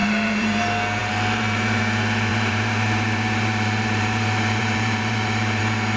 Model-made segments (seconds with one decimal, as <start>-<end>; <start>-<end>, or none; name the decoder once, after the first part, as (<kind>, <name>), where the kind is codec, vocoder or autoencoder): 0.0-0.6 (vocoder, BigVGAN v2); 1.0-1.8; 2.3-5.6